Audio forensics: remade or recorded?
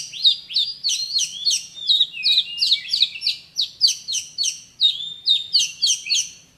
recorded